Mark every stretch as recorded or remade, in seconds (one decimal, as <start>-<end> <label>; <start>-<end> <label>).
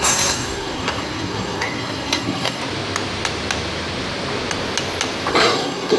0.0-2.6 remade; 2.6-5.3 recorded; 5.3-6.0 remade